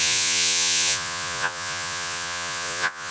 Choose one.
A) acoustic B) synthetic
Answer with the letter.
B